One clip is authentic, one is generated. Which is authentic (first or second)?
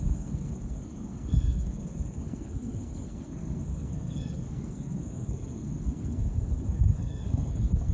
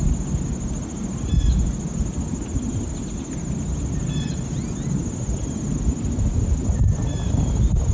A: second